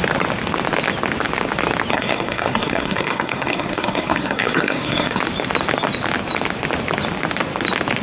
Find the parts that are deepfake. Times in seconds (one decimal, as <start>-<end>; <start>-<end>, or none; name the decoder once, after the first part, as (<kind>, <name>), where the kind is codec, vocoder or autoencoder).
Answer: 1.9-5.2 (codec, SNAC)